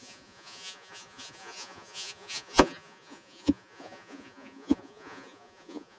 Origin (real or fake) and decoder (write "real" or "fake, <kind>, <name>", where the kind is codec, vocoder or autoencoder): fake, vocoder, Vocos